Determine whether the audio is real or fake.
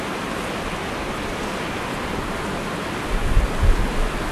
real